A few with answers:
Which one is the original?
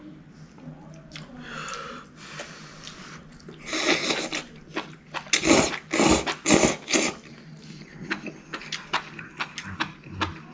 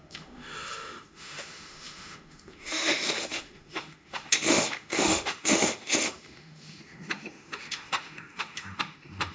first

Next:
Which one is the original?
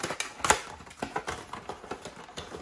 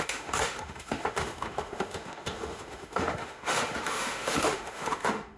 first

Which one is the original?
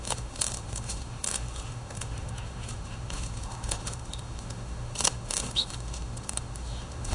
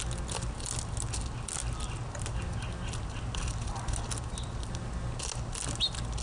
second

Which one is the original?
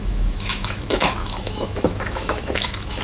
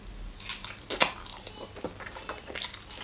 second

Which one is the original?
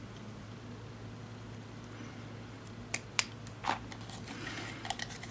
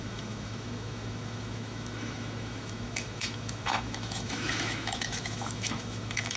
first